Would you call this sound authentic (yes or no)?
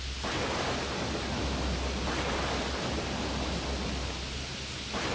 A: yes